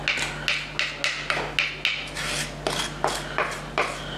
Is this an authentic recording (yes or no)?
yes